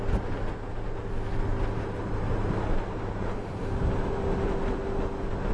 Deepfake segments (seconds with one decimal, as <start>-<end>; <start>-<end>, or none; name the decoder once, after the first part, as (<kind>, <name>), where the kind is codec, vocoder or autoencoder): none